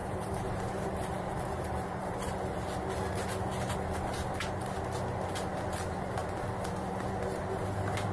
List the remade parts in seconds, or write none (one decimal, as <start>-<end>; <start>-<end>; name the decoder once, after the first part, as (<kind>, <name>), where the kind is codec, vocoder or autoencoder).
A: 0.0-2.9 (vocoder, BigVGAN v2)